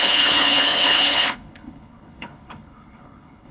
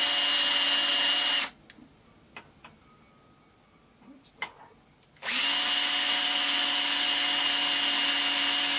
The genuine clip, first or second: second